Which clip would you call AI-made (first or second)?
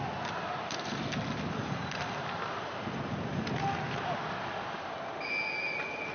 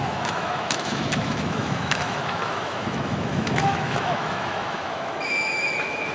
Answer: second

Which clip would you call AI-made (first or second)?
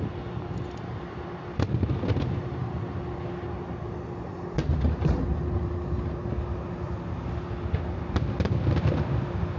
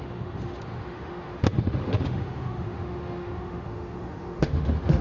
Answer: second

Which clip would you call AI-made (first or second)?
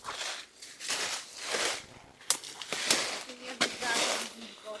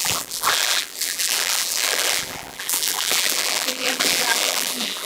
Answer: second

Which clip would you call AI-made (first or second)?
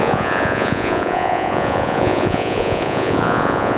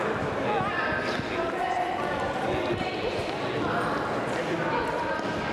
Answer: first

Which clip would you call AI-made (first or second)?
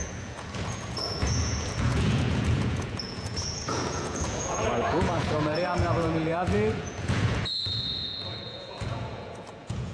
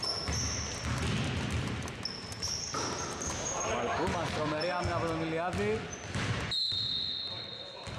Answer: first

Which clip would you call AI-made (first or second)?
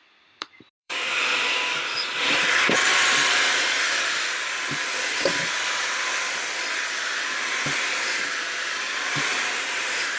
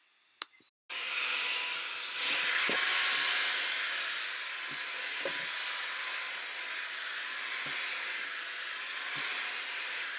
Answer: first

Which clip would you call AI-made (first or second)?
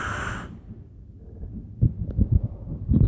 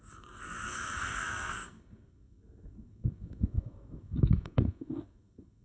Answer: second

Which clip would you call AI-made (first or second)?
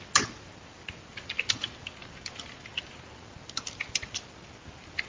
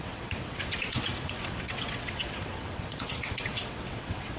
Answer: second